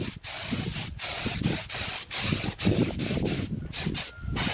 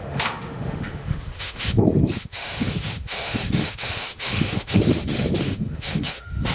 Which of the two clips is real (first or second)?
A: first